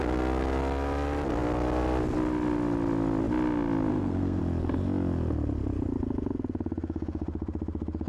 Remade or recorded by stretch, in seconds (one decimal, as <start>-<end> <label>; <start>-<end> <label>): 0.0-3.9 recorded; 3.9-4.4 remade; 4.4-8.1 recorded